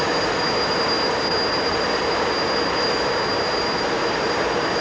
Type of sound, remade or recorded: recorded